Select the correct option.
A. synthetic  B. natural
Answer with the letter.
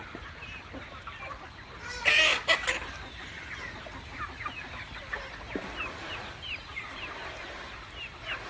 B